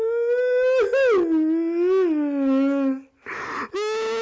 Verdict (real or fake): real